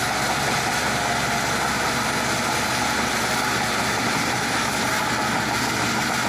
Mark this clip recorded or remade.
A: recorded